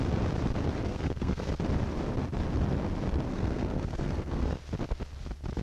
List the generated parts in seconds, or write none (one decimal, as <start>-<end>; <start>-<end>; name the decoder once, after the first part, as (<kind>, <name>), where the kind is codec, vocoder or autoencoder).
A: 0.9-1.5 (codec, SNAC); 3.3-4.6